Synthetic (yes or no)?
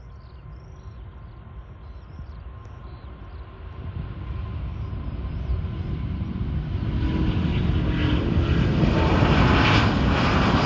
no